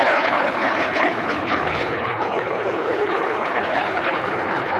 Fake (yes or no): yes